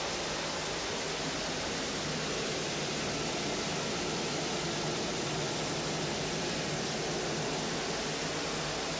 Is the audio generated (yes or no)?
no